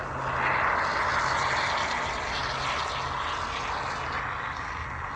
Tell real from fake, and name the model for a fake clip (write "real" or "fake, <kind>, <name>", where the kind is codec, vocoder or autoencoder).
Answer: real